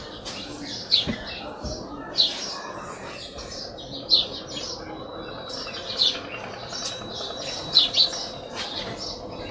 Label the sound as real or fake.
real